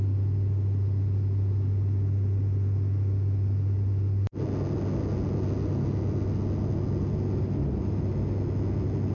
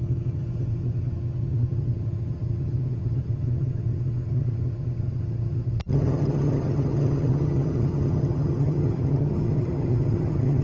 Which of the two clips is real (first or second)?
first